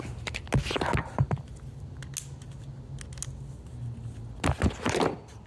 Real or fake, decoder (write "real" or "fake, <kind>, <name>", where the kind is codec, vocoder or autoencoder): real